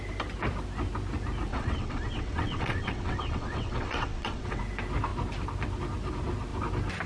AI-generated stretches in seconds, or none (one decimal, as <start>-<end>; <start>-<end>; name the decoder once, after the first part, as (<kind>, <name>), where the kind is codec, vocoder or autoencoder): 1.5-4.6 (vocoder, WaveNeXt)